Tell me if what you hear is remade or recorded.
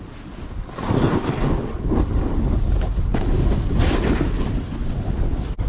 recorded